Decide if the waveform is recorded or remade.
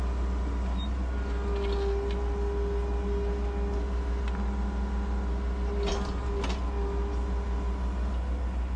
recorded